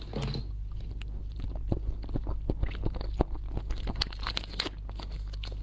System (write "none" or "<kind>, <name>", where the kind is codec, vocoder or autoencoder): none